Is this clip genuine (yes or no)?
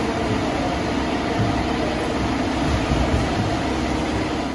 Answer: yes